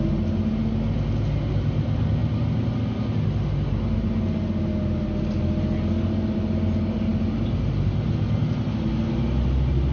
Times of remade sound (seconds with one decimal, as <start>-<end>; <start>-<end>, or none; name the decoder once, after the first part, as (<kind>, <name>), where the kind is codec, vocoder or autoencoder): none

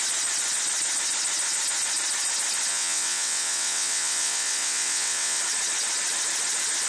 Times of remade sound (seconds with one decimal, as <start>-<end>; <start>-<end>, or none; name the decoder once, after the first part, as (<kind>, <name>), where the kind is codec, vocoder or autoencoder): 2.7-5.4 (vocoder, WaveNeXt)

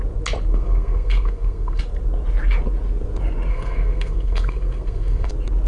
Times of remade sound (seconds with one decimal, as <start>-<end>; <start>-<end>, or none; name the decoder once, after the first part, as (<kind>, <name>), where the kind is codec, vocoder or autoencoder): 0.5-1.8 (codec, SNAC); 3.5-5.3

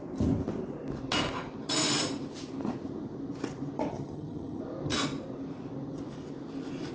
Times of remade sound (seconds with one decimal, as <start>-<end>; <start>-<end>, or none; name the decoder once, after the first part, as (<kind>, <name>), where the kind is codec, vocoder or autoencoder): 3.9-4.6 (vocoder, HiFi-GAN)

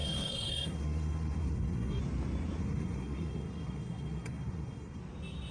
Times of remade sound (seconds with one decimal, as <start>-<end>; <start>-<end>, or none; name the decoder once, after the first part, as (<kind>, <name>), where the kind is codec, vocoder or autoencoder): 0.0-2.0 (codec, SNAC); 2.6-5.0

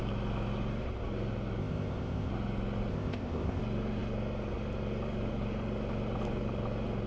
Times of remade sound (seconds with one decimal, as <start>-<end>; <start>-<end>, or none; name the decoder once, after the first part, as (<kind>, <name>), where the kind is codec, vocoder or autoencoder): 1.6-2.3 (codec, ZipCodec); 2.9-3.6